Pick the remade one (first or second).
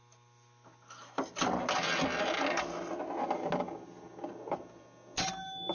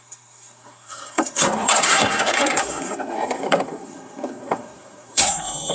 second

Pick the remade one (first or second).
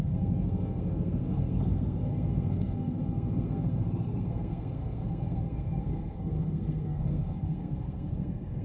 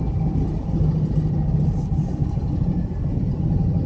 first